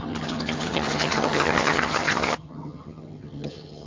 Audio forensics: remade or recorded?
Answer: remade